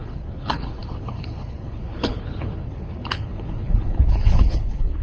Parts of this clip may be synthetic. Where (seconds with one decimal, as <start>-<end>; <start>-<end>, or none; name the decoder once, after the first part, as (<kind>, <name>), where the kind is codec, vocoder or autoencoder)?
0.0-5.0 (codec, HILCodec)